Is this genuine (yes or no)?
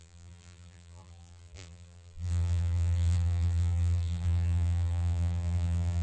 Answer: no